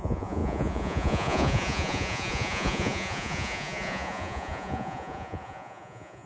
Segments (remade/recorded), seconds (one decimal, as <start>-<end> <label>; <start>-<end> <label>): 0.0-6.3 remade